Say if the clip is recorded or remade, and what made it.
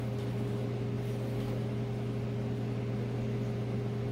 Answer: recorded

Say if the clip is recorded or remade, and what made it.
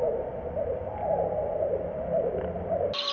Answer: recorded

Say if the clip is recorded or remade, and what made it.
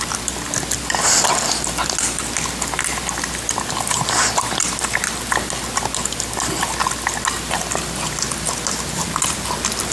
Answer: recorded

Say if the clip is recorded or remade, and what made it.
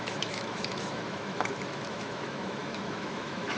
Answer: remade, autoencoder, DAC-VAE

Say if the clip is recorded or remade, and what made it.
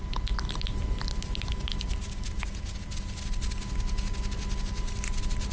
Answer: recorded